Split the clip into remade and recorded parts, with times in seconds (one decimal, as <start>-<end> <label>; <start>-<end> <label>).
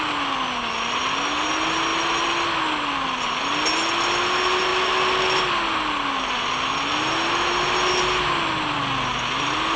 0.0-9.8 recorded